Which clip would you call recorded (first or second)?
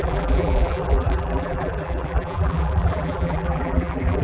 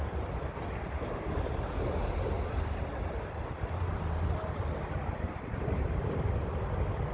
second